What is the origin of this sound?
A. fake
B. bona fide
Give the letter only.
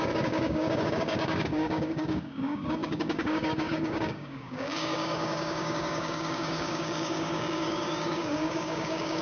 A